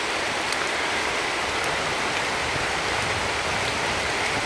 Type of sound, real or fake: real